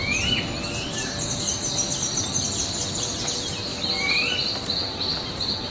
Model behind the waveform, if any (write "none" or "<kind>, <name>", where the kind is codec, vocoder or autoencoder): none